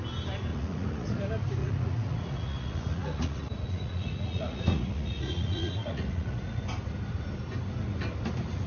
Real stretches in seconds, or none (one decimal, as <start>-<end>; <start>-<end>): 0.0-0.5; 1.2-1.6; 6.6-8.7